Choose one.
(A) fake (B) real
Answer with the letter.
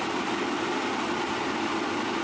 B